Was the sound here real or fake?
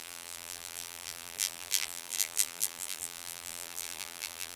fake